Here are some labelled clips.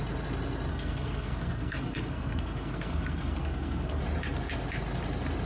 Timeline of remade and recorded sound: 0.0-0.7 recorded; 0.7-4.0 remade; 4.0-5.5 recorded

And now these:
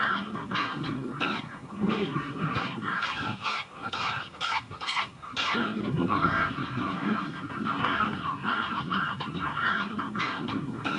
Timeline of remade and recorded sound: 0.0-11.0 remade

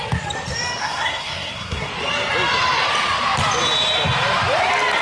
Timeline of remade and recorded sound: 0.0-0.8 recorded; 0.8-1.9 remade; 1.9-5.0 recorded

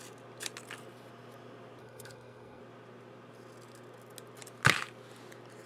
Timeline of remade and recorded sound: 0.0-1.8 recorded; 1.8-2.6 remade; 2.6-5.7 recorded